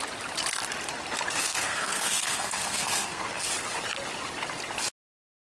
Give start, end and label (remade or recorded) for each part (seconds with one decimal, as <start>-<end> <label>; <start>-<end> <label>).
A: 0.0-1.4 recorded; 1.4-3.5 remade; 3.5-5.5 recorded